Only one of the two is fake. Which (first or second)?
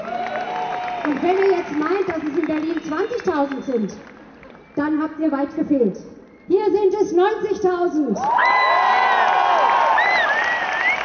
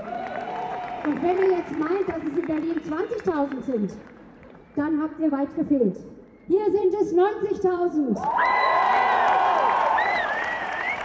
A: second